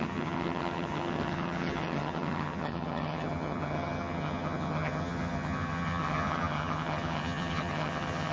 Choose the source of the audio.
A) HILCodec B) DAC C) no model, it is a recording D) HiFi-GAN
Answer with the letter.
D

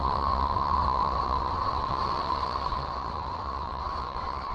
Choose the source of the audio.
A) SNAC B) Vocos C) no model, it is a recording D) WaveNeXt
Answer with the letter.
D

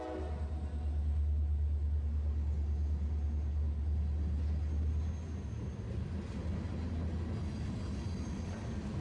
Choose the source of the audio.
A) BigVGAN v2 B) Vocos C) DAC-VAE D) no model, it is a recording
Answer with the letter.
D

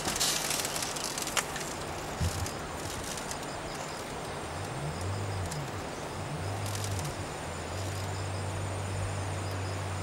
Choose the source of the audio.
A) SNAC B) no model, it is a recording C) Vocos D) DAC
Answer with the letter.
B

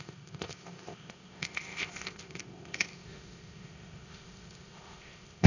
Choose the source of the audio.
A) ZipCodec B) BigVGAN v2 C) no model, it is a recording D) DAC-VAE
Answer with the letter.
A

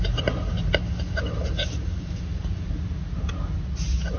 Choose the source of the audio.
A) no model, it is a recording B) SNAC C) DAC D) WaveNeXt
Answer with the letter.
A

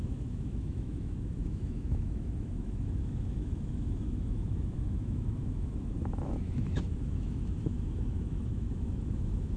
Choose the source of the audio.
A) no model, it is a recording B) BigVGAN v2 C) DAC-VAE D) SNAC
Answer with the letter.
C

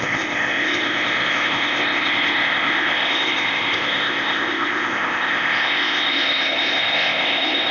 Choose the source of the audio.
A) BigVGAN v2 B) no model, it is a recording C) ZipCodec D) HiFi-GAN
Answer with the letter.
C